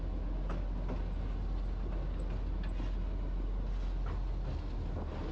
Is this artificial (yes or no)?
no